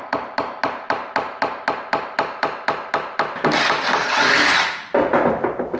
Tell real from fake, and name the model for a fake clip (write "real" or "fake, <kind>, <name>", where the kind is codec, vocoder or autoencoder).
real